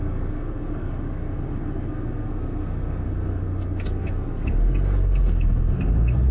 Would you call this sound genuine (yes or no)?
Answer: no